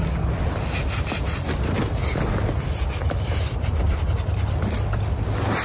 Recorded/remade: recorded